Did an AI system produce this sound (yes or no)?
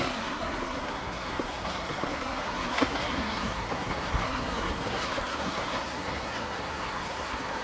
yes